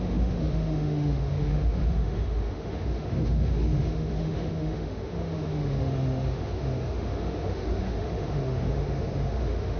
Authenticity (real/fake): fake